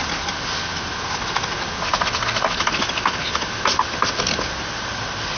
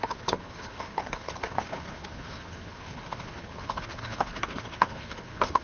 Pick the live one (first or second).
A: first